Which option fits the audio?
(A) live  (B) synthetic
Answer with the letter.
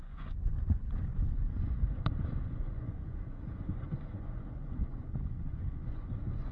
B